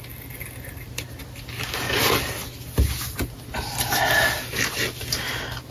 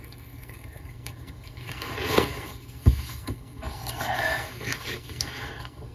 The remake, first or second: second